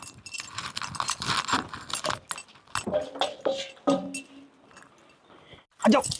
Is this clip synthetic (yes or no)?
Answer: no